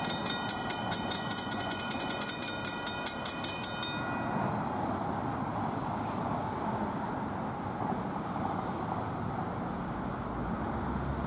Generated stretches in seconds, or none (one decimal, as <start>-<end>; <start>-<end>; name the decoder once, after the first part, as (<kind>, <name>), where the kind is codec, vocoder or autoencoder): 0.8-2.4 (vocoder, Vocos)